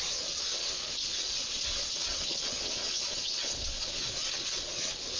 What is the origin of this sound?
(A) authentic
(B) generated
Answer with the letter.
B